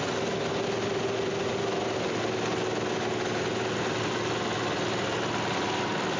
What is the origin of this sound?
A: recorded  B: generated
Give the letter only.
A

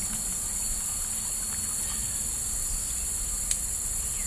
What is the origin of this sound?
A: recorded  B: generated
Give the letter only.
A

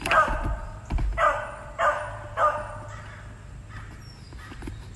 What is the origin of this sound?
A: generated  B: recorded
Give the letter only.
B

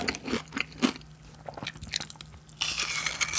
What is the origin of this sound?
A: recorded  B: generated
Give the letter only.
A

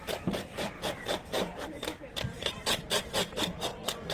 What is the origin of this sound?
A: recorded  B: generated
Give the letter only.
B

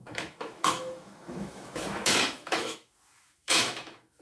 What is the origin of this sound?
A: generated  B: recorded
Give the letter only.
A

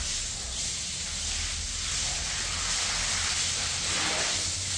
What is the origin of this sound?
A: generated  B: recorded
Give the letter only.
B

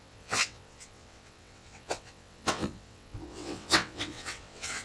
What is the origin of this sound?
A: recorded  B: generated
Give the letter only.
B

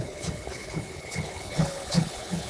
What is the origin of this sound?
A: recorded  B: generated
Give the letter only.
B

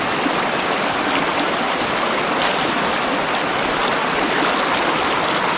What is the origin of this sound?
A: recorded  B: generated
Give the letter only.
A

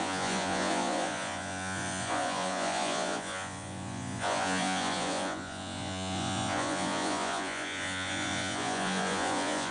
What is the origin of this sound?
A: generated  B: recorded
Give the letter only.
A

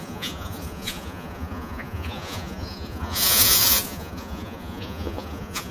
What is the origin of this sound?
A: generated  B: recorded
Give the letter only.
A